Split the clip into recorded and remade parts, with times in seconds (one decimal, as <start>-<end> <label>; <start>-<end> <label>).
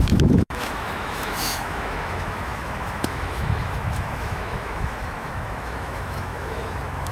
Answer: 0.0-7.1 remade